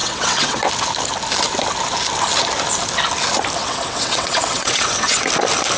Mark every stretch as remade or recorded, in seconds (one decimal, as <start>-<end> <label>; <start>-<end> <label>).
0.0-0.7 remade; 0.7-3.6 recorded; 3.6-5.3 remade; 5.3-5.8 recorded